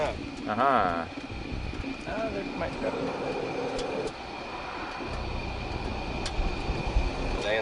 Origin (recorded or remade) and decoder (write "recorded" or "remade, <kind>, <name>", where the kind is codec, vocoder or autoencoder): recorded